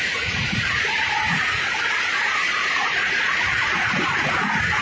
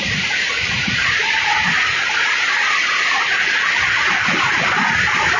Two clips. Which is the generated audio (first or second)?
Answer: first